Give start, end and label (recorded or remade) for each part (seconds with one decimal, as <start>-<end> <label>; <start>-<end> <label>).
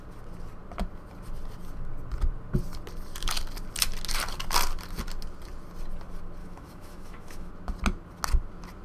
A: 0.0-6.4 recorded; 6.4-7.5 remade; 7.5-8.8 recorded